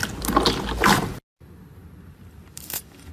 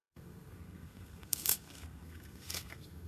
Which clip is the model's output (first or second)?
second